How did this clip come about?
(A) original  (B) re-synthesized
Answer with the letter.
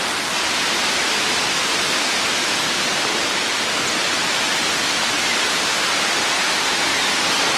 A